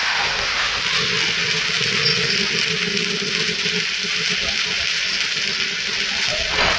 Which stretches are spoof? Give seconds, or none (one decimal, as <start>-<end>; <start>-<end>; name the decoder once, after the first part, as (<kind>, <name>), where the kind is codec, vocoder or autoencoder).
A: 0.0-0.8 (autoencoder, DAC-VAE)